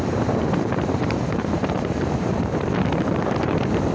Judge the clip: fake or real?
fake